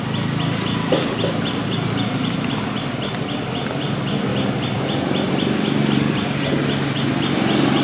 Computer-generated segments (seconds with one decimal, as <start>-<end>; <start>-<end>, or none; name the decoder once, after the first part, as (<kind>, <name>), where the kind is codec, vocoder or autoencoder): none